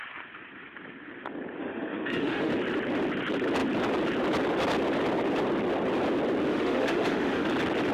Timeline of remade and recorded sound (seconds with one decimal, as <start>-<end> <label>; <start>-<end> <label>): 0.0-1.6 recorded; 1.6-2.5 remade; 2.5-6.5 recorded; 6.5-7.5 remade; 7.5-7.9 recorded